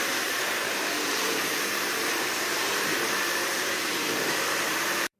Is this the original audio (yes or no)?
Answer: no